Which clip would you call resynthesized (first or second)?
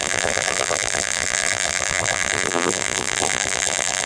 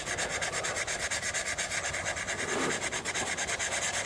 first